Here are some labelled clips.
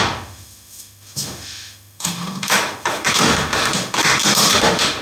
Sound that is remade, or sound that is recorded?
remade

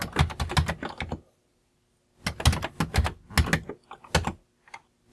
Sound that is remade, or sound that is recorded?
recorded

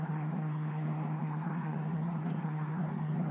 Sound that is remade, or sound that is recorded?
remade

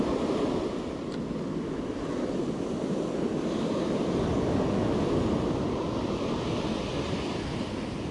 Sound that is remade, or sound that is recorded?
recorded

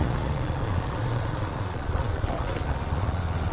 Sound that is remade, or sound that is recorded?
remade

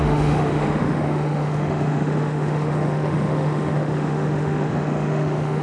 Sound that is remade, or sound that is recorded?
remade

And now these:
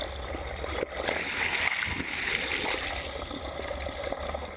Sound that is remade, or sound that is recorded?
recorded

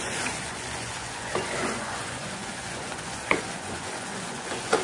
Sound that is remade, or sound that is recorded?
remade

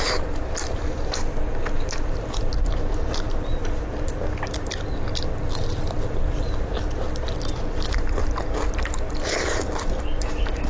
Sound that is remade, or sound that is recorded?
recorded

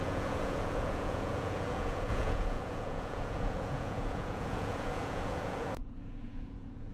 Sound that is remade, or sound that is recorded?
remade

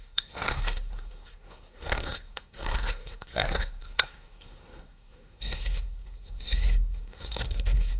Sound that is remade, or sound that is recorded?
remade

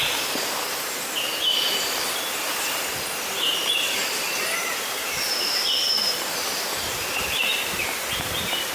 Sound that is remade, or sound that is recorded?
remade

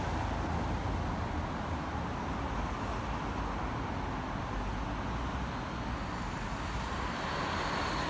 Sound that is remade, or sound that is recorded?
recorded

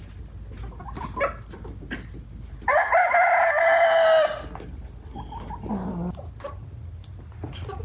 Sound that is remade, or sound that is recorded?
recorded